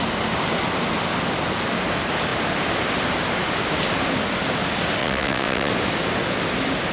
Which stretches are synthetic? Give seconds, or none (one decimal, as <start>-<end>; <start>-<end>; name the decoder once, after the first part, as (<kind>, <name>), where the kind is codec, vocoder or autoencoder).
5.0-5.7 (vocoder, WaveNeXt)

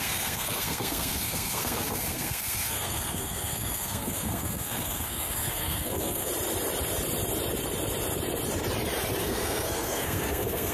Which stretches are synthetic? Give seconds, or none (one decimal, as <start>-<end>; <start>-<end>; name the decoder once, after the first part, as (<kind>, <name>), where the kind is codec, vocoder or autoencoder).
0.0-6.3 (codec, SNAC); 9.2-10.7

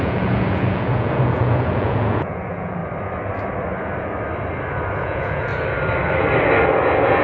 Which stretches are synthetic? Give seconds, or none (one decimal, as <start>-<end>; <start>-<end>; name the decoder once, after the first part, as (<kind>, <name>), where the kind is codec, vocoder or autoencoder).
0.0-2.8 (vocoder, Vocos); 5.0-5.5

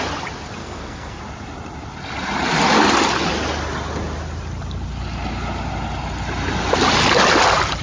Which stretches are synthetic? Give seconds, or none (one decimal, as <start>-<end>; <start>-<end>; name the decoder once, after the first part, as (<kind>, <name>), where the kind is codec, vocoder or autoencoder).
0.6-1.2 (codec, SNAC)